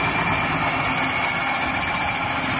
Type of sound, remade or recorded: recorded